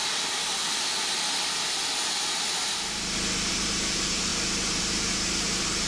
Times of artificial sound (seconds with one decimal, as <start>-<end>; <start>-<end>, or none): 3.5-4.3; 4.8-5.9